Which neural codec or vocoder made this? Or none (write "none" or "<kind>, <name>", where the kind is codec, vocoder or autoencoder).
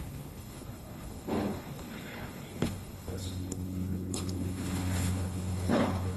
codec, HILCodec